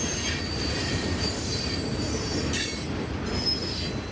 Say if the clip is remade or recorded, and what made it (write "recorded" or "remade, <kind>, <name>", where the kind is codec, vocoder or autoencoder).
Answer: recorded